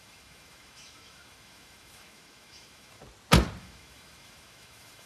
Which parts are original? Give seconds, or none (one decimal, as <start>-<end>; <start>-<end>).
3.0-3.6